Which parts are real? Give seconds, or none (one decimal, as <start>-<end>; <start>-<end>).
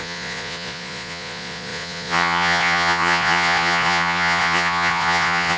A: none